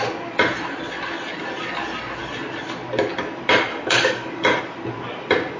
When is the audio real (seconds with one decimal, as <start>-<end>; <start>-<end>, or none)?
0.0-3.7; 4.6-5.6